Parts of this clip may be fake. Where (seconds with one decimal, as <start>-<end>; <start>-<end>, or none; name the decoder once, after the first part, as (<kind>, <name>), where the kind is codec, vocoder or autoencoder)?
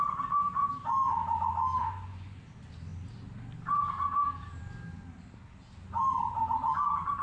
1.8-2.4 (vocoder, Vocos)